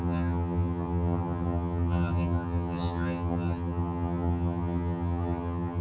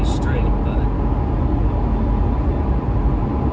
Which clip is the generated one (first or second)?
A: first